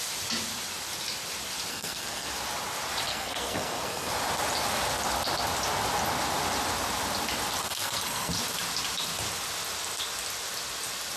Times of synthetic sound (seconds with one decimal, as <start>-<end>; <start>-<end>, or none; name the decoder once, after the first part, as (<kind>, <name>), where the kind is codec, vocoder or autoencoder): 1.7-2.3 (codec, SNAC); 3.1-4.1; 7.6-8.3